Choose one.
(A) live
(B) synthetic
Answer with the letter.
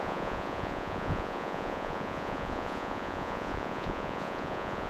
B